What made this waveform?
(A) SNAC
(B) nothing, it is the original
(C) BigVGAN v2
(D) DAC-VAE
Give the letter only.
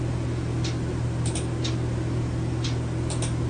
B